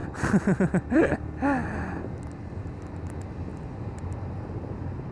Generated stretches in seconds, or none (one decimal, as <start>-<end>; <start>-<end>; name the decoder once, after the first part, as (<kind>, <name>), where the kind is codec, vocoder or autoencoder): 0.9-1.6 (vocoder, BigVGAN v2); 2.9-5.1